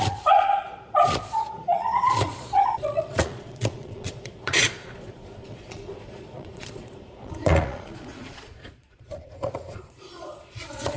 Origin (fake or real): fake